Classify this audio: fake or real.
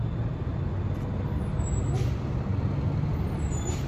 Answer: real